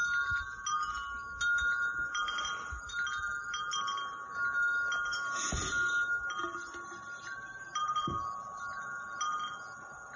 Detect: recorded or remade recorded